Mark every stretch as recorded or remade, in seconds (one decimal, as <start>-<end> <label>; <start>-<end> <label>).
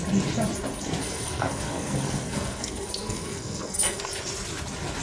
0.0-1.0 recorded; 1.0-4.0 remade; 4.0-5.0 recorded